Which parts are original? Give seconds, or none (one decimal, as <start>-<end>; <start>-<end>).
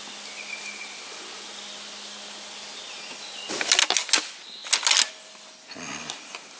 0.0-6.6